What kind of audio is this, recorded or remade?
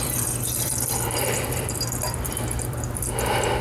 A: remade